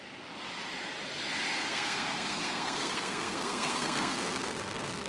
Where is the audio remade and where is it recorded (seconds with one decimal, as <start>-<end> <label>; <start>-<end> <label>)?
0.0-1.7 recorded; 1.7-5.1 remade